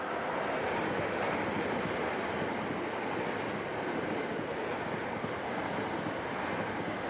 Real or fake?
real